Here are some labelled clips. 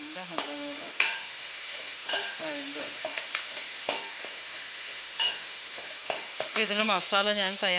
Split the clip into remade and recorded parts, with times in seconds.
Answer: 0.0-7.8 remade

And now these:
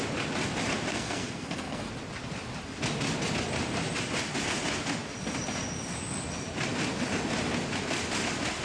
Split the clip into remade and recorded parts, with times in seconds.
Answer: 0.0-0.9 recorded; 0.9-1.9 remade; 1.9-8.6 recorded

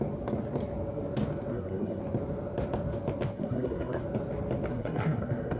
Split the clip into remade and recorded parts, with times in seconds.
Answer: 0.0-1.5 recorded; 1.5-2.0 remade; 2.0-3.3 recorded; 3.3-4.0 remade; 4.0-4.7 recorded; 4.7-5.6 remade

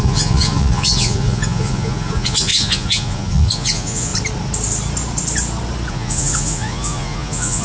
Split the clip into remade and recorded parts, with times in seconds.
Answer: 0.0-4.1 remade; 4.1-5.9 recorded; 5.9-7.6 remade

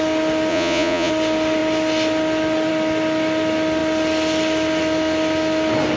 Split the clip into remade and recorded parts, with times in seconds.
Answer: 0.0-0.5 recorded; 0.5-1.1 remade; 1.1-6.0 recorded

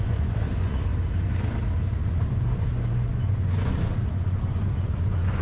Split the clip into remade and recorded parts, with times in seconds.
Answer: 0.0-0.9 remade; 0.9-2.0 recorded; 2.0-5.4 remade

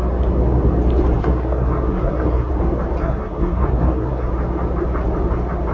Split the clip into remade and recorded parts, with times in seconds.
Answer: 0.0-1.2 recorded; 1.2-2.5 remade; 2.5-3.0 recorded; 3.0-4.3 remade; 4.3-5.7 recorded